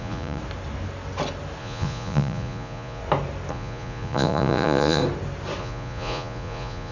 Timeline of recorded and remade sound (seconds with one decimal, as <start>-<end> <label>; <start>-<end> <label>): 0.0-0.4 remade; 0.4-1.6 recorded; 1.6-3.0 remade; 3.0-3.5 recorded; 3.5-5.0 remade; 5.0-5.6 recorded; 5.6-6.9 remade